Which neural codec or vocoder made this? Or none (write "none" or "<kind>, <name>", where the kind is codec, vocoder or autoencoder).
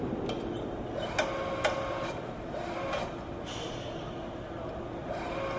none